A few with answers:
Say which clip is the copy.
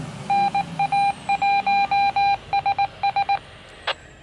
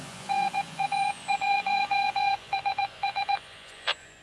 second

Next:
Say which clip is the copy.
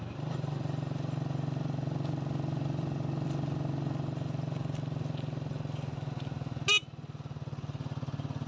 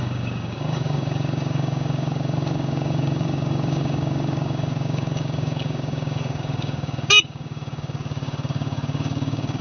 second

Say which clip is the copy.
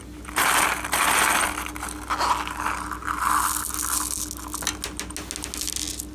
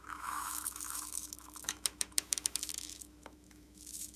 second